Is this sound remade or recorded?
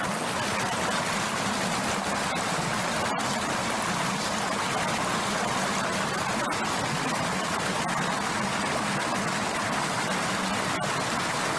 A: recorded